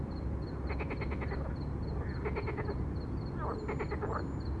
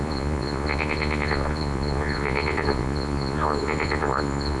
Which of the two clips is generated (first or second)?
second